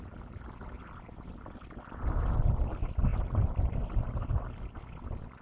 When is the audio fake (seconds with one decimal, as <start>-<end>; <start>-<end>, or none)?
none

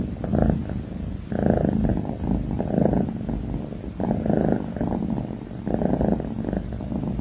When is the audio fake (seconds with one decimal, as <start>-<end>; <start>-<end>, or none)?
none

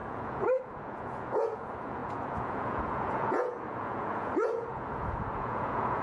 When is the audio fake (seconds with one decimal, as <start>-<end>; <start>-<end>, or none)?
0.0-6.0

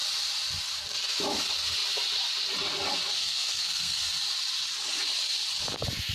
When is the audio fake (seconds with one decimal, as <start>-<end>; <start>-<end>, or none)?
3.1-4.0

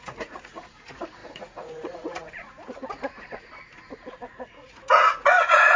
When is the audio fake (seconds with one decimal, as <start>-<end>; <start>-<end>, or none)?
0.0-5.8